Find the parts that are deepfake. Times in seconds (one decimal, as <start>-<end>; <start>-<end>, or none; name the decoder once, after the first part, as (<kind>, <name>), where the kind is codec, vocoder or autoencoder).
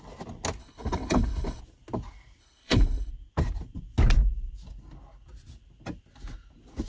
0.6-1.6 (codec, HILCodec); 2.4-3.1